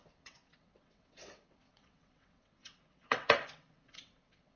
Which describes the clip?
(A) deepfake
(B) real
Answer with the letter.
A